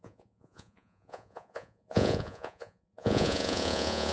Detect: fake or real fake